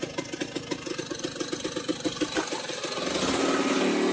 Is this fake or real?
real